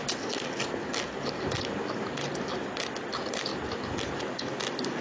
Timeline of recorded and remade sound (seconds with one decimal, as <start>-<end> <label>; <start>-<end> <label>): 0.0-5.0 recorded